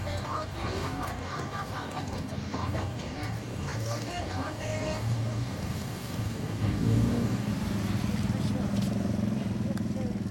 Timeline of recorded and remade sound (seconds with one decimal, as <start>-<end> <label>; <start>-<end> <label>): 0.0-7.5 remade; 7.5-10.3 recorded